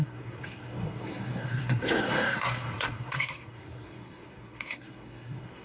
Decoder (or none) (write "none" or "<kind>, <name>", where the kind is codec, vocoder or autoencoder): codec, SNAC